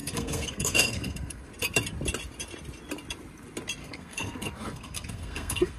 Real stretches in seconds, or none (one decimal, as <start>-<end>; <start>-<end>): 1.5-3.8